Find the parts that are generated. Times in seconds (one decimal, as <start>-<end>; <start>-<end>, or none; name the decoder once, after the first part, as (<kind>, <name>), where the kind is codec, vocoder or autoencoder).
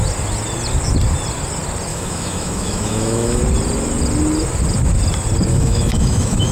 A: 1.9-3.4 (autoencoder, DAC-VAE); 5.5-6.5